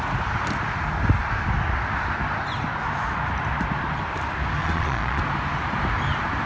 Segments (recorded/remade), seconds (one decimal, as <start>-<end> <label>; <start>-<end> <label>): 0.0-4.6 recorded; 4.6-5.2 remade; 5.2-6.5 recorded